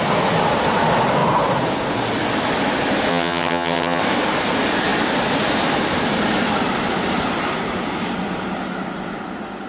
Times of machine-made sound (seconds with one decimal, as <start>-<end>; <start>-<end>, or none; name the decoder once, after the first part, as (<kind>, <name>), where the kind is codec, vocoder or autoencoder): 3.1-4.0 (vocoder, HiFi-GAN)